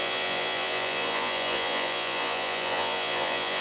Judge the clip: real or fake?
fake